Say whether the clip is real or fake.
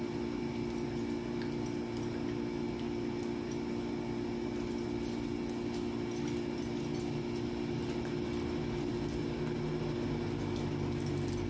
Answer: real